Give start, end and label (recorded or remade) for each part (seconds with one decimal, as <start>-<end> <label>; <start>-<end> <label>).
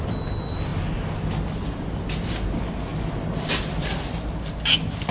0.0-5.1 recorded